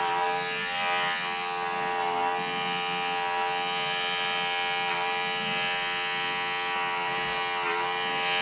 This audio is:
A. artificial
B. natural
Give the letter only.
B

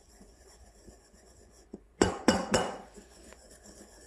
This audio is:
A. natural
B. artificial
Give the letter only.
B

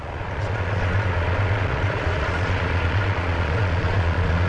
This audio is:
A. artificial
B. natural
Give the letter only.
A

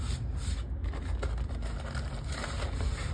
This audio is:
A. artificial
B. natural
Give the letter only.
B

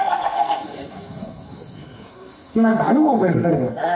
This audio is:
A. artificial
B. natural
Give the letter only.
A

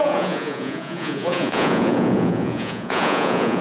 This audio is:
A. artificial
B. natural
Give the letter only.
A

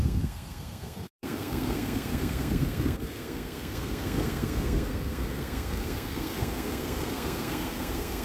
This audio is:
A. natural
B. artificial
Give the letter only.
B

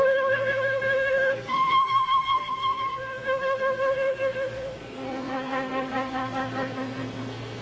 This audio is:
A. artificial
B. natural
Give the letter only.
A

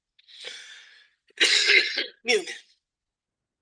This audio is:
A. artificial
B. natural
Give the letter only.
B